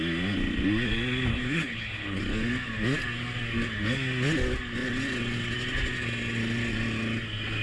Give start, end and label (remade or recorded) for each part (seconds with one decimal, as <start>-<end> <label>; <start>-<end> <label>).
0.0-1.3 recorded; 1.3-2.2 remade; 2.2-7.6 recorded